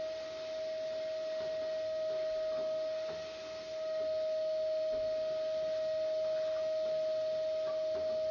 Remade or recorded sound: recorded